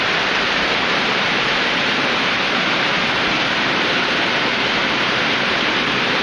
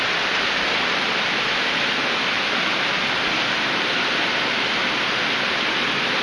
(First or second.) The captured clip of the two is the second